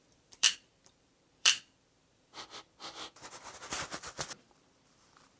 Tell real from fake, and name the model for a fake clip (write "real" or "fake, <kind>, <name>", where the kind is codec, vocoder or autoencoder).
fake, vocoder, BigVGAN v2